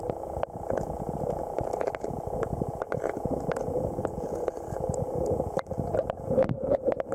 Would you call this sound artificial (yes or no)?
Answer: no